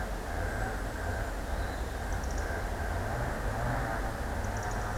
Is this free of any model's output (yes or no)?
yes